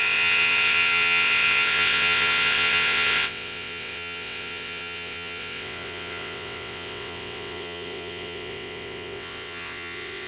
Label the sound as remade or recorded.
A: remade